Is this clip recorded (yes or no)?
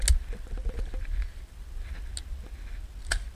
yes